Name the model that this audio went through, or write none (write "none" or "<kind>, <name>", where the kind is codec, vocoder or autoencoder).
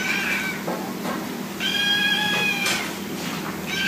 none